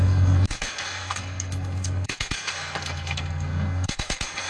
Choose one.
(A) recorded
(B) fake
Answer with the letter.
B